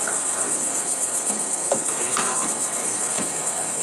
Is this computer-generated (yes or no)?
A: yes